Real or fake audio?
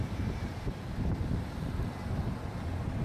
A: fake